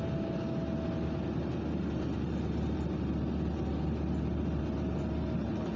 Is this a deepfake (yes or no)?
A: no